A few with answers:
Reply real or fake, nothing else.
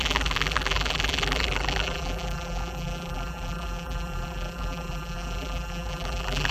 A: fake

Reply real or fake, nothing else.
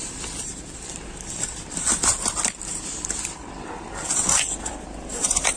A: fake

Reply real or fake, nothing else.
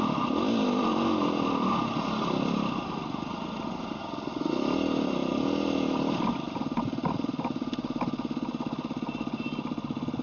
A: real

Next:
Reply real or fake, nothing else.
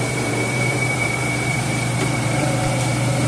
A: fake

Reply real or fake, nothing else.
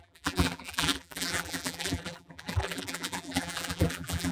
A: fake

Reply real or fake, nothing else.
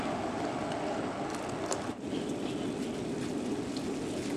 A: real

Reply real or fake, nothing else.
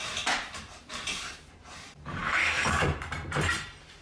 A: fake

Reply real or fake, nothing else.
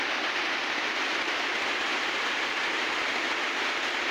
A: real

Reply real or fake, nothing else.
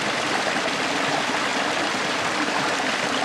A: real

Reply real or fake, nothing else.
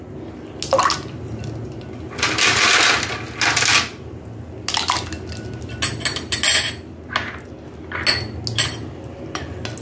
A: real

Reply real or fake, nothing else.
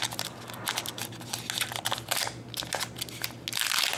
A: real